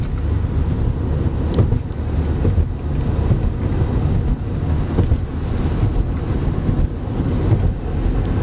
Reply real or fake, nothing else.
real